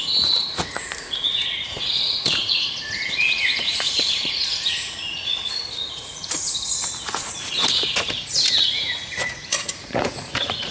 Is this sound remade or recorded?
remade